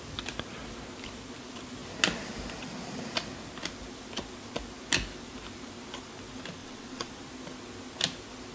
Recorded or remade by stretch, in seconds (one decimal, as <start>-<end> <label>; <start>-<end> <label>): 0.0-6.6 recorded; 6.6-7.1 remade; 7.1-8.5 recorded